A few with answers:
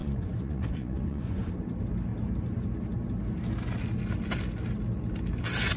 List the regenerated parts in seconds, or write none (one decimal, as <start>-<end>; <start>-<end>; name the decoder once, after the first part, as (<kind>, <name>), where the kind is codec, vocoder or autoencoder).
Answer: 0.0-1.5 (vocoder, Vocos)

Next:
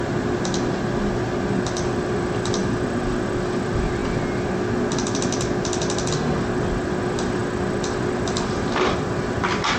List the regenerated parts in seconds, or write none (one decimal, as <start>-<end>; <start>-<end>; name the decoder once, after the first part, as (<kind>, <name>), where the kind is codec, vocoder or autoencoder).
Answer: 0.0-4.0 (vocoder, BigVGAN v2); 7.0-7.4; 8.0-9.8

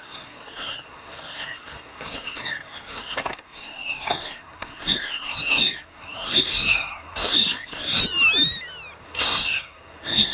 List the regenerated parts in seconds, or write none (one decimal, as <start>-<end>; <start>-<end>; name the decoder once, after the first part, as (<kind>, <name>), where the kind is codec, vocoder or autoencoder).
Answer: 0.0-8.0 (codec, SNAC); 9.0-10.3

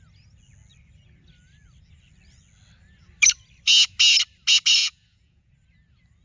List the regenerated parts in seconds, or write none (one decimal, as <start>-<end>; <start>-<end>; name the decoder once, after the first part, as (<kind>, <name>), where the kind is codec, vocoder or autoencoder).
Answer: 4.8-5.5 (vocoder, Vocos)